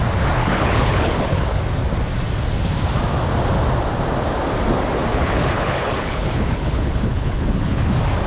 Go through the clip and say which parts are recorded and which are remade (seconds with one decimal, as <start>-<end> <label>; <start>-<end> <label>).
0.0-0.4 recorded; 0.4-1.6 remade; 1.6-5.1 recorded; 5.1-7.9 remade; 7.9-8.3 recorded